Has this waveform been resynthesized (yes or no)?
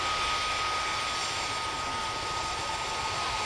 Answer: no